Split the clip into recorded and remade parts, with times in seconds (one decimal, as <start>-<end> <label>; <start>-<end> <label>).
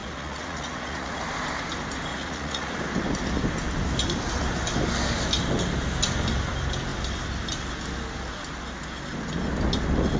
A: 0.0-1.2 remade; 1.2-2.1 recorded; 2.1-2.8 remade; 2.8-10.2 recorded